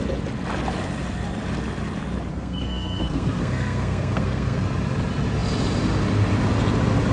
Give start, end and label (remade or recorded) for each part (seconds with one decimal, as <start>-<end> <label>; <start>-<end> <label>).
0.0-2.3 recorded; 2.3-4.6 remade; 4.6-7.1 recorded